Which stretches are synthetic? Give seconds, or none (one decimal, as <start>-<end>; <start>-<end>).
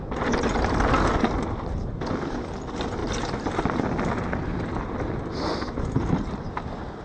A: none